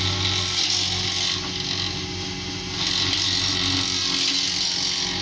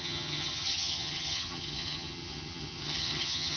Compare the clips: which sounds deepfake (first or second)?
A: second